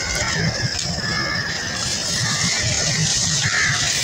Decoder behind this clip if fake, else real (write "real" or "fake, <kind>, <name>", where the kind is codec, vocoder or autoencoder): real